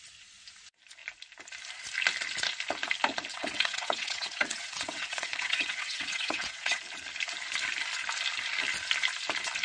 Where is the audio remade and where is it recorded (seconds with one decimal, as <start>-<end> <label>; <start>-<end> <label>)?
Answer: 0.0-3.3 recorded; 3.3-6.8 remade; 6.8-9.6 recorded